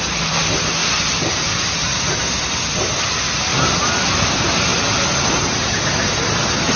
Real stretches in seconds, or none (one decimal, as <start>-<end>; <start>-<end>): 0.0-0.8; 1.8-3.5; 4.3-4.7; 5.3-6.8